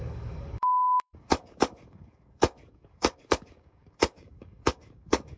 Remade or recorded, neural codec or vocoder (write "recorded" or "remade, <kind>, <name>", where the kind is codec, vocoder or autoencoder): remade, codec, DAC